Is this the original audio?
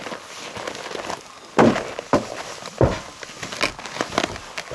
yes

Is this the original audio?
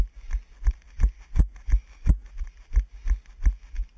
yes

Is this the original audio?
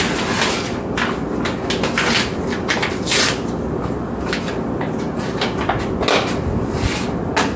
yes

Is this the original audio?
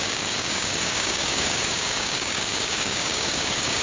no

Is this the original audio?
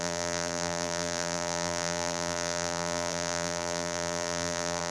no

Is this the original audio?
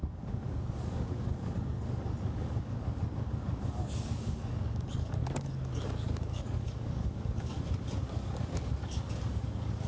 no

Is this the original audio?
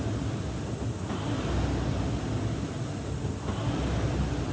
yes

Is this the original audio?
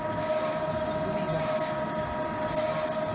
yes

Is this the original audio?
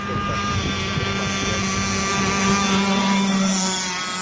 yes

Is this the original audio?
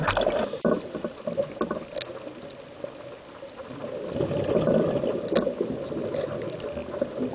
yes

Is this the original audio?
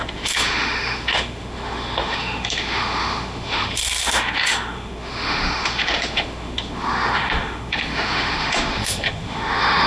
no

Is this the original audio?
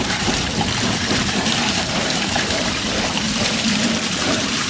no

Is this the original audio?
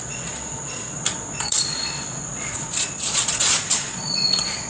no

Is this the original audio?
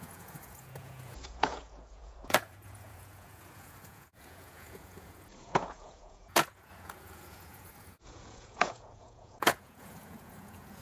no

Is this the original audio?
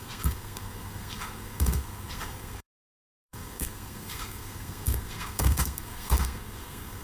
no